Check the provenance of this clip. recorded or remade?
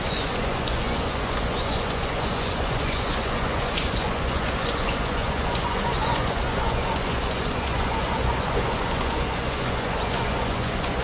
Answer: remade